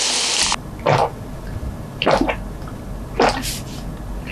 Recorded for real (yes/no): yes